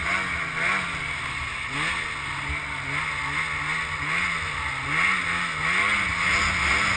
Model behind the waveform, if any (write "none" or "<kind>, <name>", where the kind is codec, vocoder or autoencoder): none